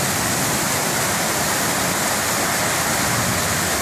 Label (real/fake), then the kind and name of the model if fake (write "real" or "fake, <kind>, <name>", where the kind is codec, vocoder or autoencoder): real